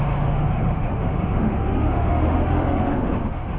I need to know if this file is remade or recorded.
remade